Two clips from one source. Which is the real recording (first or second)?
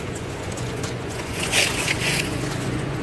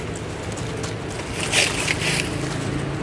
second